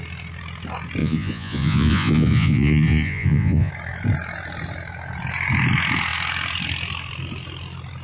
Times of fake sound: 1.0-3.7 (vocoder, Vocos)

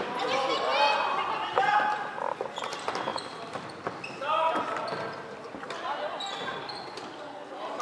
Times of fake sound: none

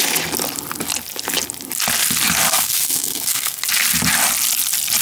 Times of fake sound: 2.5-3.6 (codec, SNAC)